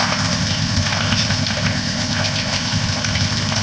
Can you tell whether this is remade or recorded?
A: remade